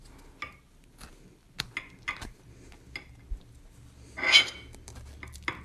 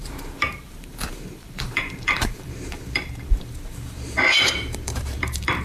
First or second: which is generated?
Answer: second